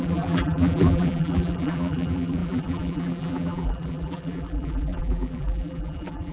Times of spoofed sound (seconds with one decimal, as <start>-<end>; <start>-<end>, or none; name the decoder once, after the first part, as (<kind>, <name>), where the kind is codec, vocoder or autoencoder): 0.0-6.3 (vocoder, BigVGAN v2)